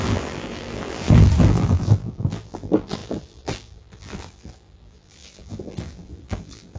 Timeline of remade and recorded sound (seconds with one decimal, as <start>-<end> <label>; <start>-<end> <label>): 0.0-6.8 remade